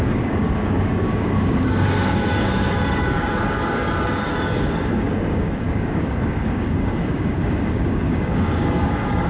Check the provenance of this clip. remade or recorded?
remade